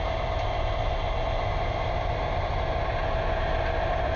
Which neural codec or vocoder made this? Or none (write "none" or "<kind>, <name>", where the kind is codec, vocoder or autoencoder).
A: none